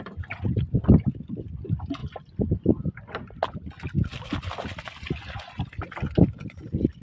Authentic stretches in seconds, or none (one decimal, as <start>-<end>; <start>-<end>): 0.0-7.0